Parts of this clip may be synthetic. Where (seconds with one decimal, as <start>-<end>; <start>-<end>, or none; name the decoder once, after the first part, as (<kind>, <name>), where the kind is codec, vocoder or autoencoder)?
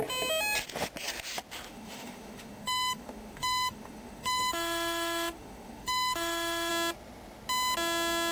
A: 1.7-6.7 (autoencoder, DAC-VAE)